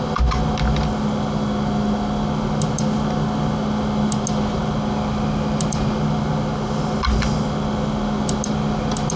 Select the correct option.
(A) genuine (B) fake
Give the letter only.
A